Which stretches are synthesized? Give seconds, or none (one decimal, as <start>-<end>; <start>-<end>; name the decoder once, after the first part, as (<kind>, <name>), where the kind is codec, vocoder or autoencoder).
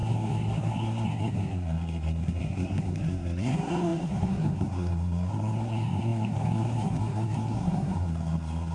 0.0-8.7 (codec, SNAC)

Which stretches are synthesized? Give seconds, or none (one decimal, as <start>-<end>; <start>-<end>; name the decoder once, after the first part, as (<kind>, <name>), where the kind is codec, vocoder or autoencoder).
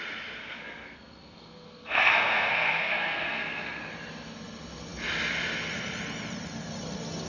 0.4-3.8 (codec, SNAC)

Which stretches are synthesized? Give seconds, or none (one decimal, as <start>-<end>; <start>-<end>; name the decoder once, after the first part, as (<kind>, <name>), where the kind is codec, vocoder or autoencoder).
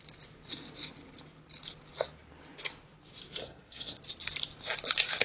3.4-4.0 (codec, SNAC)